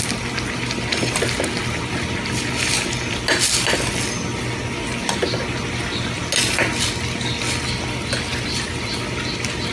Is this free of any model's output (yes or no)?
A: yes